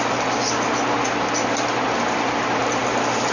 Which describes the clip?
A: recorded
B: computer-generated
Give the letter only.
A